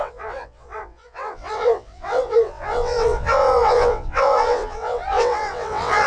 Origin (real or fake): fake